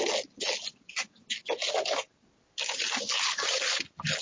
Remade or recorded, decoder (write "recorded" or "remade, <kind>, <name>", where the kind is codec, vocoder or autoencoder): recorded